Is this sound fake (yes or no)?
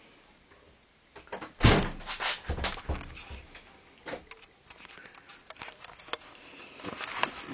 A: no